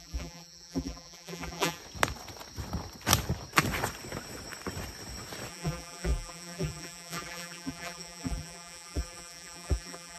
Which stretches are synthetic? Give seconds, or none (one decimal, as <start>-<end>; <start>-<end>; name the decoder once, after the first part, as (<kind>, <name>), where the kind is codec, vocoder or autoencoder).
0.0-1.8 (vocoder, BigVGAN v2); 5.5-10.2